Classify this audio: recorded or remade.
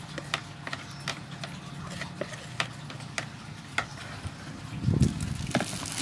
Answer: recorded